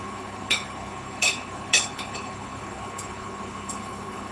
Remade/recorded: remade